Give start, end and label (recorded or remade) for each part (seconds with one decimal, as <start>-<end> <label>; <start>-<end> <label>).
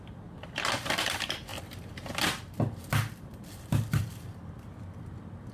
0.0-1.5 remade; 1.5-3.9 recorded; 3.9-5.5 remade